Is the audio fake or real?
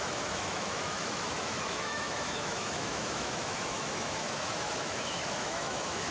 fake